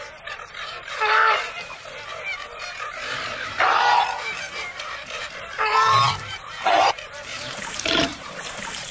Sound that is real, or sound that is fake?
fake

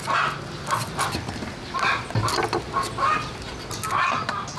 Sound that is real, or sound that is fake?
real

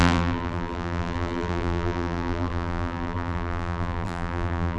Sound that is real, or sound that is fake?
fake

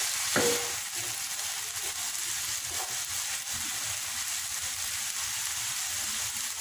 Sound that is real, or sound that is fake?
real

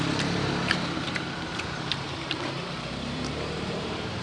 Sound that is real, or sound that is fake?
fake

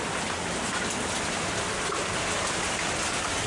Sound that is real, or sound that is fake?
real